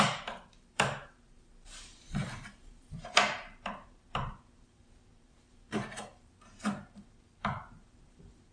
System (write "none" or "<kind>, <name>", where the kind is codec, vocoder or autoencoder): vocoder, BigVGAN v2